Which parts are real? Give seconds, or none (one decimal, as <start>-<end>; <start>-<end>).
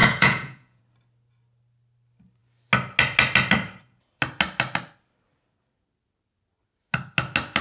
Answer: 0.8-7.6